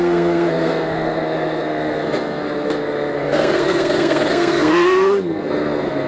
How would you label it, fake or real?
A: fake